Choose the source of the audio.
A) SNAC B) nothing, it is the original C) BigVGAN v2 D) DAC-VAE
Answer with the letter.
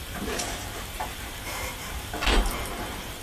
C